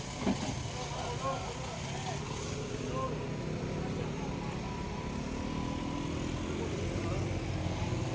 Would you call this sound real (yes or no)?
yes